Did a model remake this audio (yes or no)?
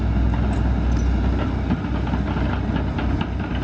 no